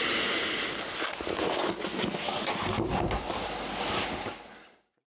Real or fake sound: real